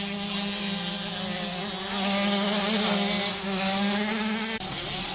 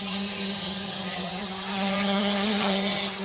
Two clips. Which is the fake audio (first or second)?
second